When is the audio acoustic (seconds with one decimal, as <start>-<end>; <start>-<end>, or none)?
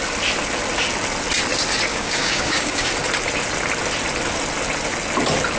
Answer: 0.0-1.9; 2.9-5.6